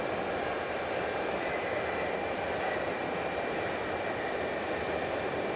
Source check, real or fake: fake